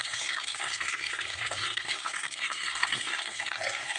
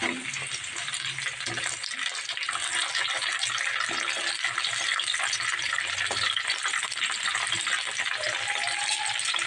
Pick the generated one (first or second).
first